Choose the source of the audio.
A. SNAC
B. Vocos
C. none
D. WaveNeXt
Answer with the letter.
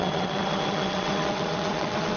D